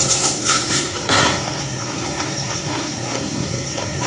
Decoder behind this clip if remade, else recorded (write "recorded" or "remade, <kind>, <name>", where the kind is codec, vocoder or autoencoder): remade, codec, SNAC